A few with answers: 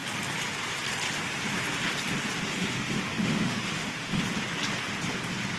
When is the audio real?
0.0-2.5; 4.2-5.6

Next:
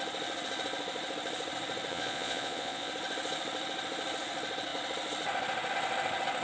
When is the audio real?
0.0-1.9; 2.9-6.4